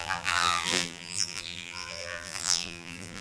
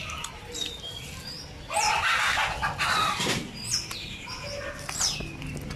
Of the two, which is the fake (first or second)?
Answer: first